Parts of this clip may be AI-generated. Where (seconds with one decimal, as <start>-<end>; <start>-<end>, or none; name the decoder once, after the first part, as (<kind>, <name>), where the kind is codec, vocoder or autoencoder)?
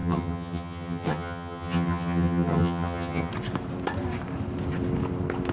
0.0-3.3 (vocoder, HiFi-GAN)